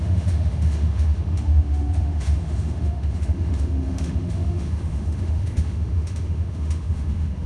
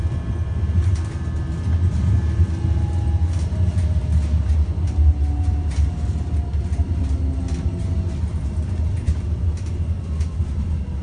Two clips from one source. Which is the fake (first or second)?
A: first